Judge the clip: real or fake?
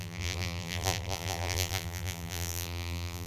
fake